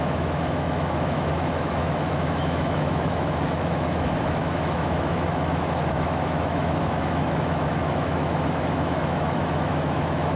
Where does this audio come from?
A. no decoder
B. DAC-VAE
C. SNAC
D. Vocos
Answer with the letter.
B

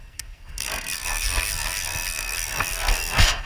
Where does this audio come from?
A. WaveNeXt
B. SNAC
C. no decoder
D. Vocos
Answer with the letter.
B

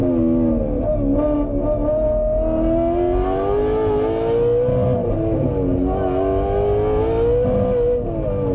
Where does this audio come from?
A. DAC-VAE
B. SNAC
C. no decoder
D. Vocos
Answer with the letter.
C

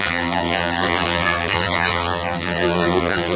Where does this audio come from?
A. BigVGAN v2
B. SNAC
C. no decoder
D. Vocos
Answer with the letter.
A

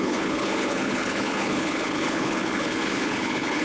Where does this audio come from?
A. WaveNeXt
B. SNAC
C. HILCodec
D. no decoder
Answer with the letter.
C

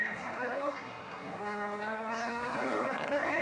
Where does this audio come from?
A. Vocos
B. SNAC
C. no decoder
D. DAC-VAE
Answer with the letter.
B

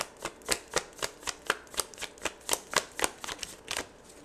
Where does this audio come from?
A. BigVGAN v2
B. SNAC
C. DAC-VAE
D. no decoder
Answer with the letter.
D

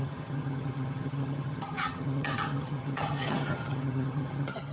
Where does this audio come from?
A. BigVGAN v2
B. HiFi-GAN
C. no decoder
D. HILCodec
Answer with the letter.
B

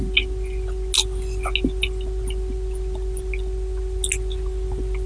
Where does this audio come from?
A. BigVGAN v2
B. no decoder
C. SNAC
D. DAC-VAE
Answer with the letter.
B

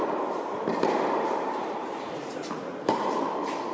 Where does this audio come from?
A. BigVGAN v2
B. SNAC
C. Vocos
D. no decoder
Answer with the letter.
A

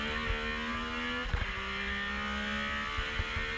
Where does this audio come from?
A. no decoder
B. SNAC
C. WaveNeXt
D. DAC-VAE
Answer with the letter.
A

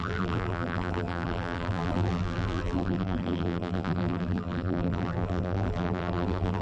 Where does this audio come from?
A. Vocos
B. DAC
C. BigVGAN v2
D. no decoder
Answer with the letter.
C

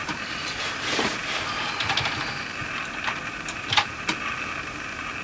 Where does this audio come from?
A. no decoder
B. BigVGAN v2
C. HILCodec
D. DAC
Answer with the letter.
B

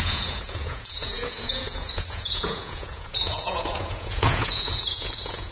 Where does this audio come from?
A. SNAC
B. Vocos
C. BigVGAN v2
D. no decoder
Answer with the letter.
B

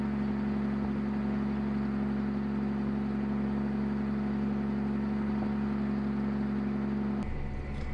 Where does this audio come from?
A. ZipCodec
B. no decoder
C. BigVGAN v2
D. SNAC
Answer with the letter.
B